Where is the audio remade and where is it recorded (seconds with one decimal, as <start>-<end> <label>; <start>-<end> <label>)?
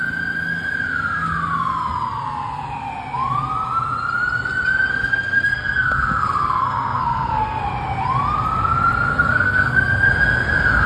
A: 0.0-4.9 recorded; 4.9-7.6 remade; 7.6-9.1 recorded; 9.1-10.1 remade; 10.1-10.9 recorded